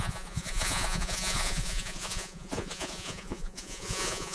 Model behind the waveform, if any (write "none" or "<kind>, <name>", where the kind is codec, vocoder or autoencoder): vocoder, Vocos